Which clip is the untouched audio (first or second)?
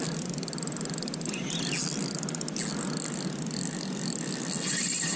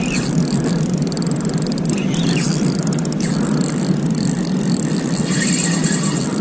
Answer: first